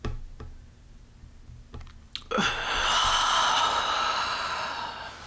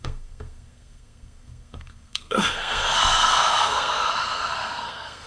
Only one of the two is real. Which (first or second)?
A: first